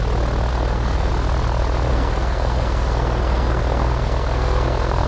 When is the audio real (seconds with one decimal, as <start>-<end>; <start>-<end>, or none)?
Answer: 0.0-0.5; 1.1-1.9